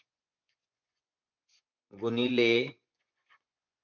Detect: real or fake fake